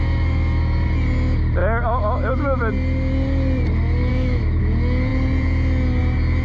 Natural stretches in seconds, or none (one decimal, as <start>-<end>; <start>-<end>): 0.0-1.6; 2.3-4.1; 4.6-6.4